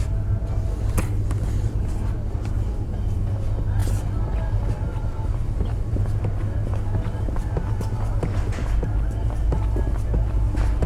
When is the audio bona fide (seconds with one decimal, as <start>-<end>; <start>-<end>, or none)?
0.0-10.9